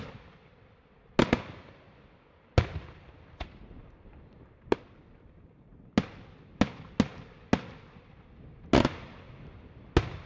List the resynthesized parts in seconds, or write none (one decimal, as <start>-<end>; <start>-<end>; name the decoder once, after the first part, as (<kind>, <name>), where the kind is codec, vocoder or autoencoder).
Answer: none